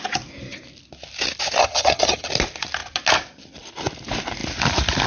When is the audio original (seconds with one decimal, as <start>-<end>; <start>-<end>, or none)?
0.0-1.6; 2.3-5.1